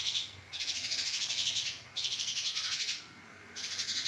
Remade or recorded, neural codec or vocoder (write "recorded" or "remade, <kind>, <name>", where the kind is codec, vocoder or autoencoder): remade, codec, SNAC